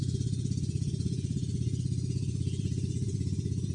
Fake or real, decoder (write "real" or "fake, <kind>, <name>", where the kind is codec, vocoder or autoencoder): fake, vocoder, Vocos